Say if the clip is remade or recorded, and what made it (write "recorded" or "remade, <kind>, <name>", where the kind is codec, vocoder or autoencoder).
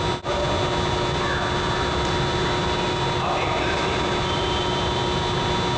recorded